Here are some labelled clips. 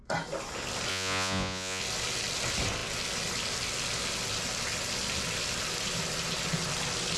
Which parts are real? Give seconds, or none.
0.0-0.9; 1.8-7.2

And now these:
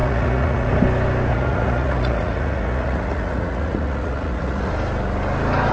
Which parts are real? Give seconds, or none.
0.7-1.3; 4.7-5.7

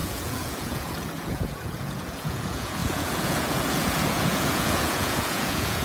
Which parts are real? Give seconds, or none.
none

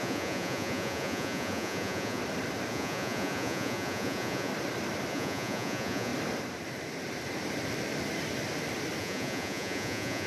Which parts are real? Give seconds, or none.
2.2-2.7; 4.5-5.1; 6.1-9.0

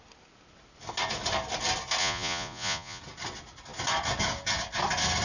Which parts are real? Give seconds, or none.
0.0-2.0; 3.0-5.2

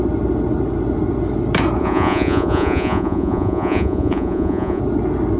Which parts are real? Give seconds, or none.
0.0-1.8; 4.8-5.4

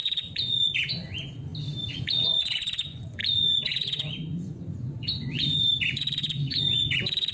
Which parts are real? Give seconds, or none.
1.5-2.0